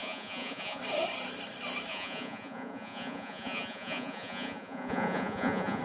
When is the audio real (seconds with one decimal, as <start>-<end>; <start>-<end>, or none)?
0.8-1.9